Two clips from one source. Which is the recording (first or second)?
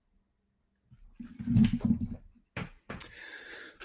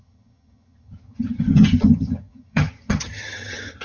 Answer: first